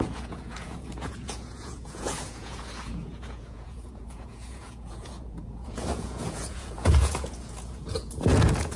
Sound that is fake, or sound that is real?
fake